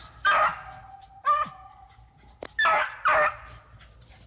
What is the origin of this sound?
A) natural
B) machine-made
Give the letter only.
A